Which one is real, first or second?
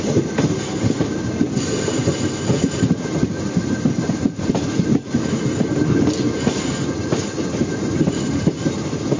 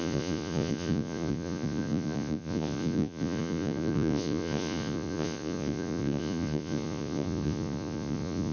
first